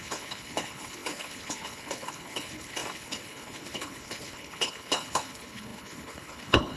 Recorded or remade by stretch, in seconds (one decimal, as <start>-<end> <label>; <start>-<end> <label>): 0.0-6.8 remade

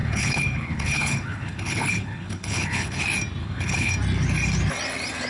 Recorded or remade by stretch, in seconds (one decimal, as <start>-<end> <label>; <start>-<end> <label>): 0.0-3.0 remade; 3.0-3.4 recorded; 3.4-3.9 remade; 3.9-5.3 recorded

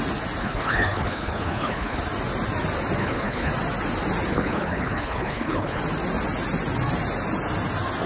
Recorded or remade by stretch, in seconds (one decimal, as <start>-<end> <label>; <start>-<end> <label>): 0.0-0.4 recorded; 0.4-2.0 remade; 2.0-3.0 recorded; 3.0-3.5 remade; 3.5-4.3 recorded; 4.3-5.8 remade; 5.8-8.1 recorded

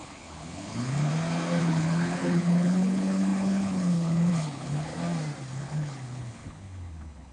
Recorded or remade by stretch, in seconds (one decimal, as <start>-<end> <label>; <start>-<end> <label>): 0.0-1.1 remade; 1.1-1.6 recorded; 1.6-4.9 remade; 4.9-5.5 recorded; 5.5-7.3 remade

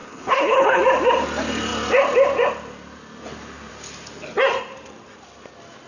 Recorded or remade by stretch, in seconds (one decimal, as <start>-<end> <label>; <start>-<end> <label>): 0.0-0.8 remade; 0.8-5.9 recorded